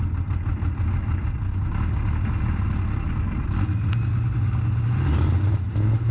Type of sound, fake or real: real